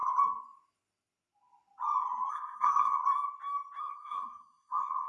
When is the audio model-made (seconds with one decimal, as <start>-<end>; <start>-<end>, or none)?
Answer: 2.3-3.0; 3.8-5.1